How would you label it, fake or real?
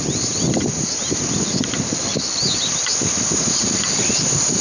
real